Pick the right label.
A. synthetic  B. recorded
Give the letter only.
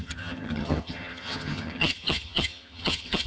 A